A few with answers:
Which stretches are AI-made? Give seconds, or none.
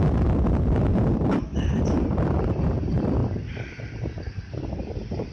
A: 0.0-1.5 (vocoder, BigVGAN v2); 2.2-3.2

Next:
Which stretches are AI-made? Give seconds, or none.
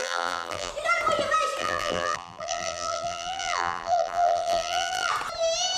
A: 0.0-0.7 (vocoder, BigVGAN v2); 1.6-5.1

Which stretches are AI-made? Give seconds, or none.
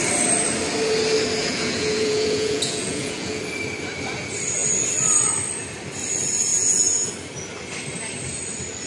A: 1.4-3.4 (vocoder, Vocos); 6.5-7.1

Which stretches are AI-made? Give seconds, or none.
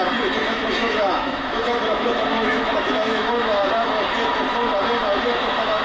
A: 0.4-3.9 (autoencoder, DAC-VAE); 5.0-5.8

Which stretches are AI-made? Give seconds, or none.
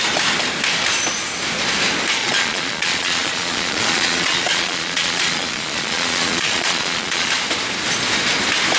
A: 2.2-7.3 (vocoder, Vocos)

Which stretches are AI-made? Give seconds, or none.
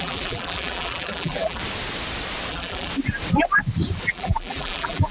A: 0.0-1.6 (vocoder, BigVGAN v2); 2.5-2.9; 4.1-5.1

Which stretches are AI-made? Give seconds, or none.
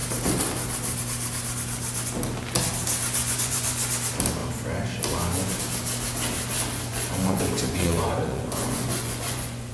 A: 3.2-3.9 (vocoder, Vocos); 6.9-9.7